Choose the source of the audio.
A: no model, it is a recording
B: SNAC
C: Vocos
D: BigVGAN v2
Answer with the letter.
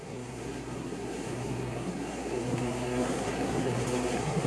B